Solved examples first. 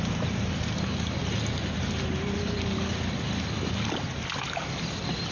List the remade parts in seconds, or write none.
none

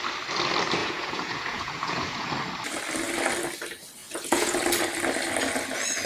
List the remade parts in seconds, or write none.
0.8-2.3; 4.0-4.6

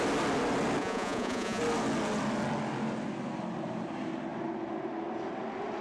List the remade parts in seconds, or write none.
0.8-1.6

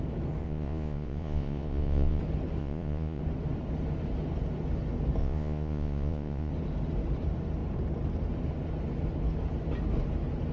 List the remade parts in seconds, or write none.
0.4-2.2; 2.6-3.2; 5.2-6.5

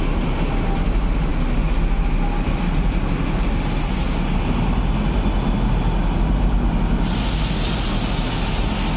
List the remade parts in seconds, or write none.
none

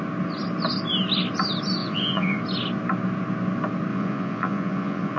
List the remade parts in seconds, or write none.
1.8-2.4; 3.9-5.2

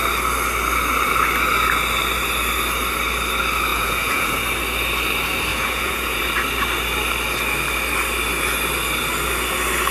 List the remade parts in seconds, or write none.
3.7-4.4; 5.5-6.2